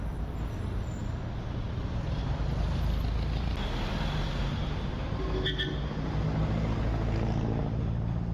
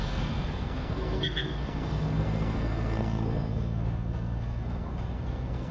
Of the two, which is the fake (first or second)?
second